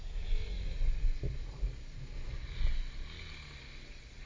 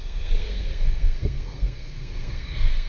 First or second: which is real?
first